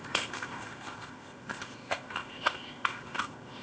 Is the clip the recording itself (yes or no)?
no